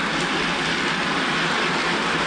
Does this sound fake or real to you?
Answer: real